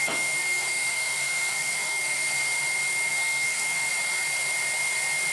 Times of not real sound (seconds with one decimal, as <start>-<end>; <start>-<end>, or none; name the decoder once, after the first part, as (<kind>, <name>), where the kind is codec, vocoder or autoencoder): 0.0-2.3 (codec, SNAC); 3.1-3.9

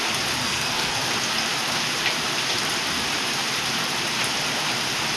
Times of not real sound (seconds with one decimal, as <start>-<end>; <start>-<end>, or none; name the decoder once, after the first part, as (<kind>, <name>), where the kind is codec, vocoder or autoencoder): 0.4-1.1 (codec, SNAC)